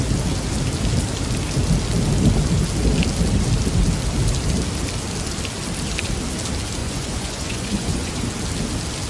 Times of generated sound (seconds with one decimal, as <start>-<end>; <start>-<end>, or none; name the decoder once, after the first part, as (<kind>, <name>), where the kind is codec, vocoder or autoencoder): 6.8-8.1 (vocoder, Vocos)